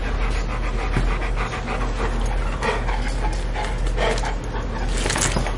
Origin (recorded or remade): recorded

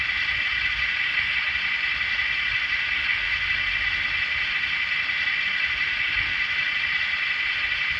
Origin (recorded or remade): recorded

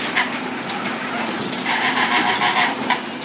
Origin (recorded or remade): recorded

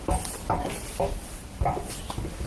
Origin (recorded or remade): recorded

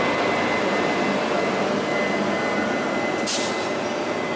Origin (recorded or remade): recorded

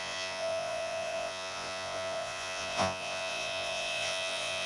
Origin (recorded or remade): remade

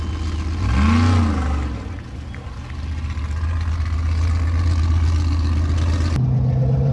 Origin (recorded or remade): recorded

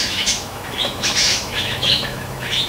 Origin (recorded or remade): remade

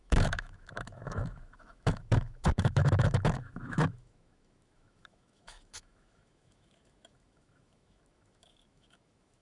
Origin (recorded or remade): remade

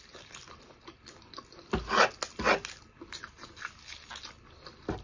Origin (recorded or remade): recorded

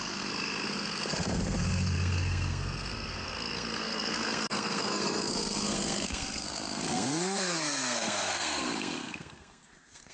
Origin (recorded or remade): remade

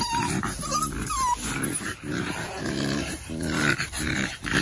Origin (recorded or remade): recorded